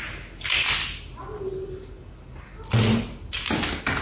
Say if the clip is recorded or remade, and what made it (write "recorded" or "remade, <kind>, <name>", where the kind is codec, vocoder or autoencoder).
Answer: recorded